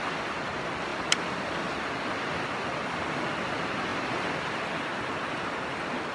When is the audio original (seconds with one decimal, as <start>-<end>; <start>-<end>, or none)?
0.0-0.9; 1.9-3.9; 5.3-6.1